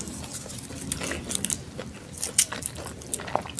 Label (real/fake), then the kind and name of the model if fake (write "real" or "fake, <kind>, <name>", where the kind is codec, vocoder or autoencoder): real